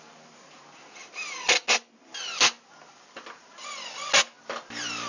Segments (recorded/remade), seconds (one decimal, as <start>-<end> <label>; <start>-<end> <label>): 0.0-5.1 recorded